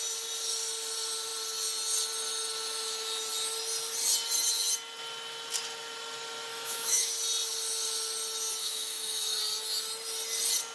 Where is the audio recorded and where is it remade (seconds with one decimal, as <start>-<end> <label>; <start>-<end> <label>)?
0.0-6.5 recorded; 6.5-7.1 remade; 7.1-8.6 recorded; 8.6-9.4 remade; 9.4-10.7 recorded